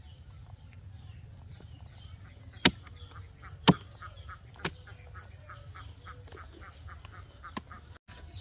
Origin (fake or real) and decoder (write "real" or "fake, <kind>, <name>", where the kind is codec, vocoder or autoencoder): real